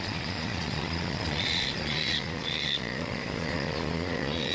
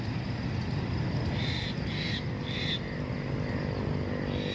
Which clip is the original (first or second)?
second